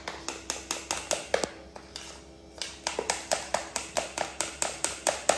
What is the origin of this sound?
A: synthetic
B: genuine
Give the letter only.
B